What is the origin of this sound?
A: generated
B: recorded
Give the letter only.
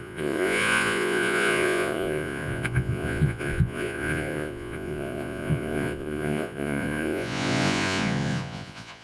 A